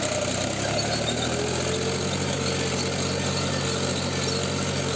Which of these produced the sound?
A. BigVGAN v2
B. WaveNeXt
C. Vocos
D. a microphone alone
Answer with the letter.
D